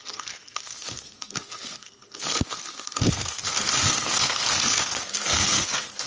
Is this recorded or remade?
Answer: remade